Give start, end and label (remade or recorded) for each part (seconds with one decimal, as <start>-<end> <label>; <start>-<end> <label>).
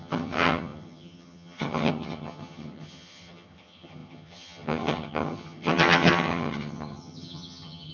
0.0-7.9 remade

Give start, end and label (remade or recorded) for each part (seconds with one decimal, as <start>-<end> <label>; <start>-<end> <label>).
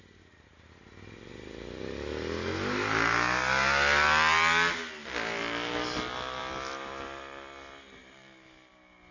0.0-9.1 recorded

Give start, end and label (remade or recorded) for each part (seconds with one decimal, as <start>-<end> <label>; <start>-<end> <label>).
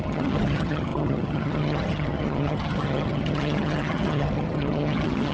0.0-5.3 remade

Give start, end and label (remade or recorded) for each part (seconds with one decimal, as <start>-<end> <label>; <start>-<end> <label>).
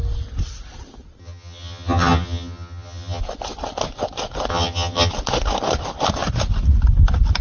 0.0-1.2 recorded; 1.2-3.2 remade; 3.2-4.5 recorded; 4.5-5.1 remade; 5.1-7.4 recorded